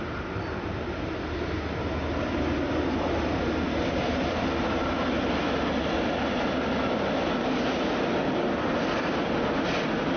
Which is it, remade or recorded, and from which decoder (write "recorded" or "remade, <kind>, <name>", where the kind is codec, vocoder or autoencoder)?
recorded